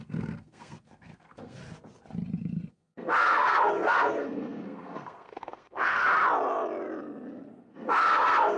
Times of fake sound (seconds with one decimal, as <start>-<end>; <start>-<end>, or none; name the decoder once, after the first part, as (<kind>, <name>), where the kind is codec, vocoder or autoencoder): 0.0-1.6 (codec, SNAC); 2.7-6.0; 7.6-8.6